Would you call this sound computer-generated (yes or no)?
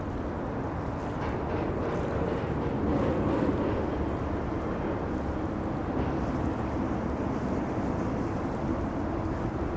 no